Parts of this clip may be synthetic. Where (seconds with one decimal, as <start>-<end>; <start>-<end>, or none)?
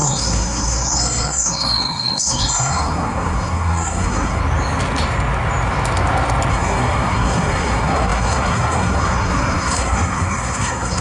0.0-4.4; 6.5-11.0